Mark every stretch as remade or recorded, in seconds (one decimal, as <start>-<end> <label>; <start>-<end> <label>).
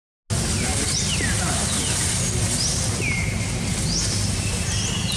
0.0-5.2 recorded